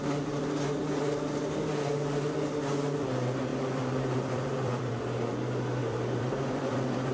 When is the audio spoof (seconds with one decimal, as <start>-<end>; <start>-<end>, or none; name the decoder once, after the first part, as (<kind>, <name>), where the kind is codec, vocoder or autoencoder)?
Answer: 3.5-5.0 (vocoder, BigVGAN v2); 5.8-7.1